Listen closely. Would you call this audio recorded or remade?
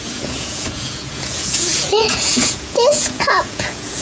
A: remade